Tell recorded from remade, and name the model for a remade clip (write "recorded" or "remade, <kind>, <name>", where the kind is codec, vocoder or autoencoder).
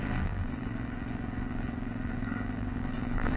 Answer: remade, vocoder, BigVGAN v2